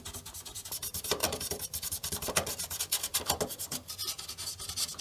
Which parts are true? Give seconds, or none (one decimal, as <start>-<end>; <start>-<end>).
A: 3.1-5.0